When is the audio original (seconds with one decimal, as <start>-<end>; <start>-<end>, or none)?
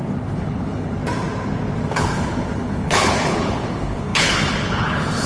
1.0-1.9